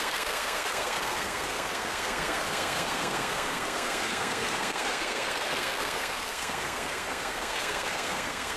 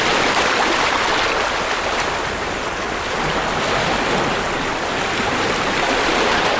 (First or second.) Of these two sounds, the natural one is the second